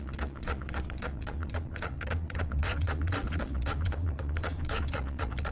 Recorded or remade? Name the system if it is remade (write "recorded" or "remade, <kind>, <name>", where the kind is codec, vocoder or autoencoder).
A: remade, vocoder, Vocos